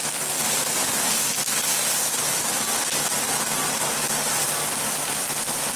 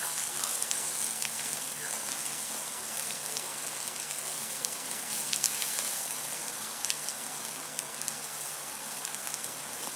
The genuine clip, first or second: first